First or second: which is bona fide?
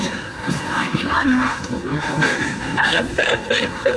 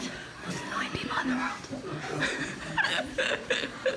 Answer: second